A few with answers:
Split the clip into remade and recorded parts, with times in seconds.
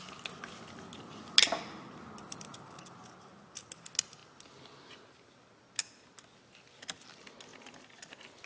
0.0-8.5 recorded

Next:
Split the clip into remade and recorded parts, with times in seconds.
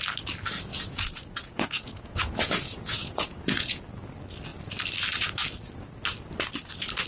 0.0-0.7 recorded; 0.7-3.8 remade; 3.8-7.1 recorded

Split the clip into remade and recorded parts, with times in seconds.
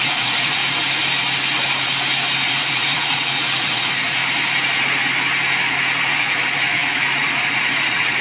0.0-0.6 remade; 0.6-2.5 recorded; 2.5-4.2 remade; 4.2-6.1 recorded; 6.1-8.2 remade